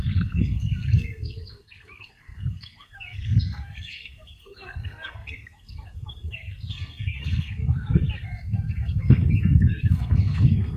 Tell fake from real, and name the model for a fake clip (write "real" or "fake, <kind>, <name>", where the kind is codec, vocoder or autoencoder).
fake, codec, SNAC